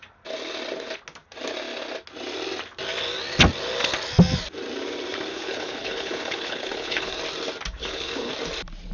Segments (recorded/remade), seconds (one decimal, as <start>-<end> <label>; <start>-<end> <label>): 0.0-5.3 recorded; 5.3-7.2 remade; 7.2-7.8 recorded; 7.8-8.3 remade; 8.3-8.9 recorded